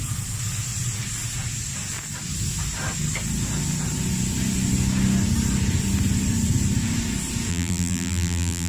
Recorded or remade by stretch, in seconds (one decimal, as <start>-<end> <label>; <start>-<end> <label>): 0.0-7.5 recorded; 7.5-8.7 remade